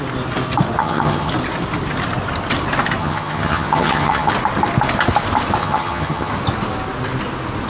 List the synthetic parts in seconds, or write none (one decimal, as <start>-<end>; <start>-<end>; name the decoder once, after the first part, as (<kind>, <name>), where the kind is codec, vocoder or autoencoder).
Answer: 0.8-1.3 (vocoder, HiFi-GAN); 3.0-4.3; 5.6-6.3

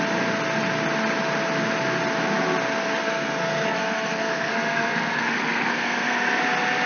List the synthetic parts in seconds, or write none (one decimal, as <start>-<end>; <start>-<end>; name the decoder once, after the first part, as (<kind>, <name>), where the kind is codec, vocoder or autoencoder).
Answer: 3.0-6.4 (codec, SNAC)